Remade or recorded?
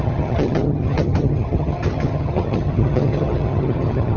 remade